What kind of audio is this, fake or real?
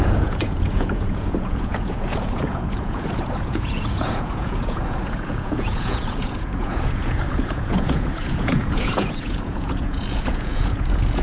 fake